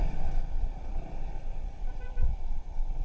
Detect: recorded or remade remade